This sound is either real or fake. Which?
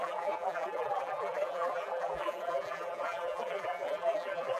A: fake